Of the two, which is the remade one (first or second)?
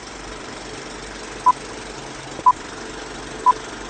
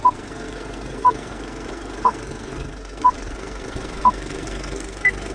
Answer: second